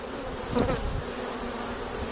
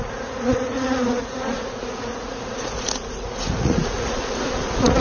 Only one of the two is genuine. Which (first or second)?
first